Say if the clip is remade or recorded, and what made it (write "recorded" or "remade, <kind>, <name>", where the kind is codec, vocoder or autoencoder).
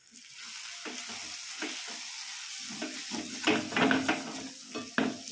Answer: recorded